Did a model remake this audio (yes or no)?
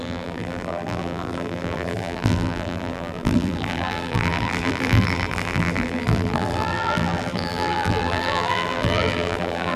yes